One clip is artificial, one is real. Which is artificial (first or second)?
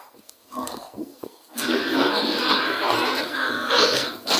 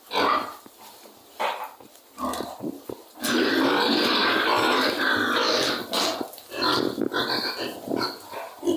first